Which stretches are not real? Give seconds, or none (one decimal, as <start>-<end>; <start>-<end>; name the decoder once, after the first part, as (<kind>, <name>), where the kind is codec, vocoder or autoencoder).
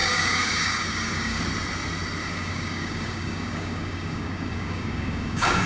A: 0.0-1.4 (codec, DAC); 2.2-5.7